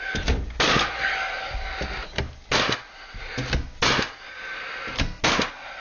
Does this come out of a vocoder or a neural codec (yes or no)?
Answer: no